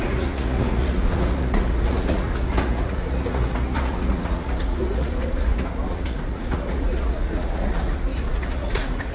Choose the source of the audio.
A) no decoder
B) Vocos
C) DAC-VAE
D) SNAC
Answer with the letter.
B